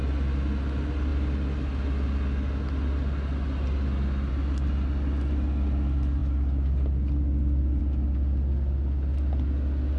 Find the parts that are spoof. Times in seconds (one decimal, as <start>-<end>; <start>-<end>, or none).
none